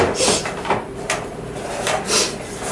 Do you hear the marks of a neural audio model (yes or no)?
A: yes